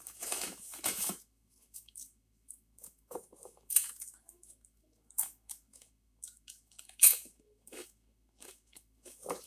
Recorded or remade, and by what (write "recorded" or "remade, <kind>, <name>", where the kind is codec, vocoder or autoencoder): remade, autoencoder, DAC-VAE